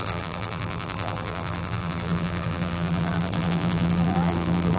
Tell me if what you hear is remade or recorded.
remade